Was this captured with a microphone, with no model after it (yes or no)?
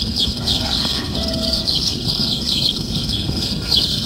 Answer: no